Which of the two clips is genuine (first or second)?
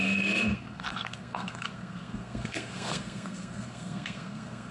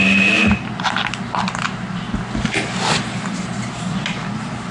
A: second